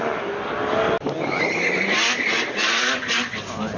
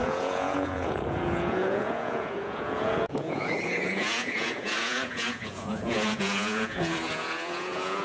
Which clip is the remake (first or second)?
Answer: second